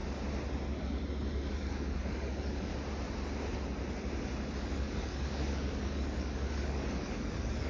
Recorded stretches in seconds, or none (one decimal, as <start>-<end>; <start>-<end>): 0.0-0.8; 2.7-4.6

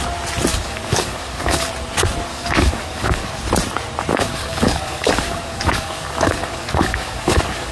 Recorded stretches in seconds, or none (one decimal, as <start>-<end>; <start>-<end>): 0.0-0.5; 1.7-2.3; 3.3-4.1